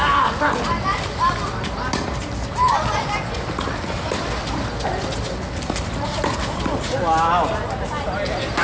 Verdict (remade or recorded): recorded